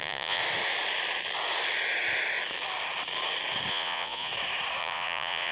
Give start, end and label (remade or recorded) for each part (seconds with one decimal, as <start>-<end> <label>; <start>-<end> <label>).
0.0-0.4 remade; 0.4-3.7 recorded; 3.7-4.3 remade; 4.3-4.8 recorded; 4.8-5.5 remade